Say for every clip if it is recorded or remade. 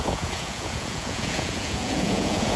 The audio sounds remade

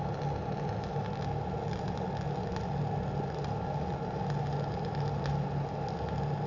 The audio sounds recorded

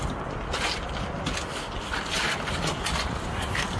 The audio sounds recorded